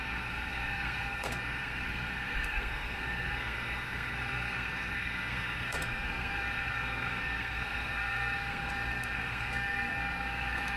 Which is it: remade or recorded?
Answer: remade